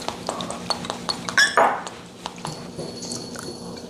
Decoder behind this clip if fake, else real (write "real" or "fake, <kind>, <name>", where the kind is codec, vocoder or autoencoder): real